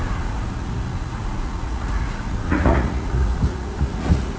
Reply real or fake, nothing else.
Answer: fake